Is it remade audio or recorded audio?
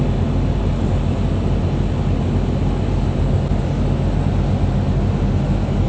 recorded